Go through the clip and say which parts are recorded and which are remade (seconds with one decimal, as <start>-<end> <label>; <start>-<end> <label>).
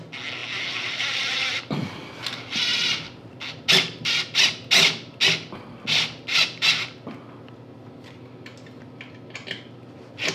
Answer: 0.0-0.4 recorded; 0.4-1.5 remade; 1.5-2.7 recorded; 2.7-4.1 remade; 4.1-10.3 recorded